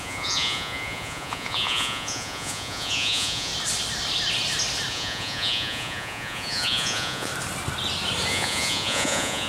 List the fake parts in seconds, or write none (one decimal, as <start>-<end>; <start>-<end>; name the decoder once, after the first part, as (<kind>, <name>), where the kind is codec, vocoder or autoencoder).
0.0-3.5 (vocoder, Vocos); 4.9-7.3; 8.3-9.5